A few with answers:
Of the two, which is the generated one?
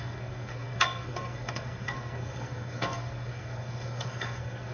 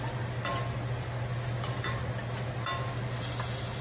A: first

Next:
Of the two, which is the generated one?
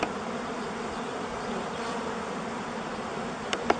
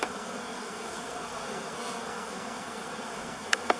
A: second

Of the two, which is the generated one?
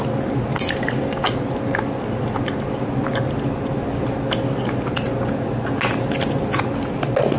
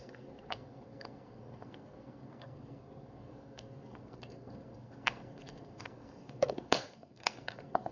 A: second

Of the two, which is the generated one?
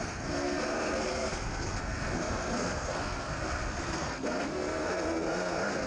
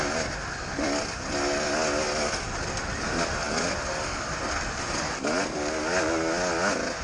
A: first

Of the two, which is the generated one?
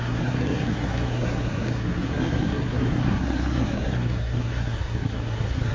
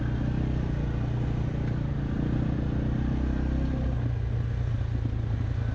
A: first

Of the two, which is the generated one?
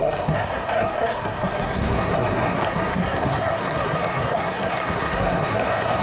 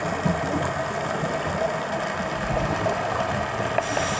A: first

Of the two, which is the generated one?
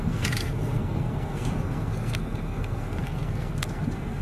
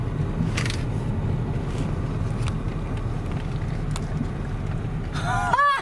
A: first